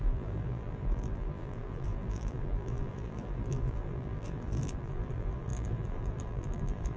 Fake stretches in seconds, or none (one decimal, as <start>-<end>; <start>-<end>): 0.0-7.0